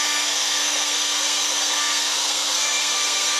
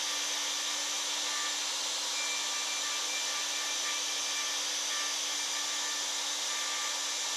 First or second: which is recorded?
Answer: second